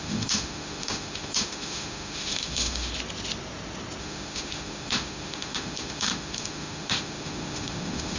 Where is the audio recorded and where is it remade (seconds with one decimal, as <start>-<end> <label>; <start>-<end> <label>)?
0.0-2.9 remade; 2.9-4.0 recorded; 4.0-8.2 remade